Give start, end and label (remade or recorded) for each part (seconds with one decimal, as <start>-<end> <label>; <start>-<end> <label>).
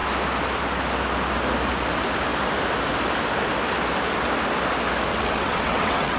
0.0-5.1 recorded; 5.1-6.2 remade